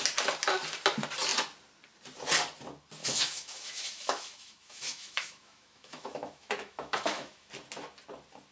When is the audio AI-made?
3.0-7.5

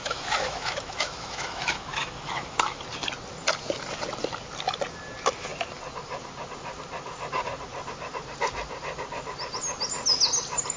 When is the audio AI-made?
0.0-2.8

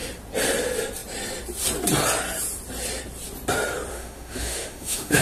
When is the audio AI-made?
3.9-5.2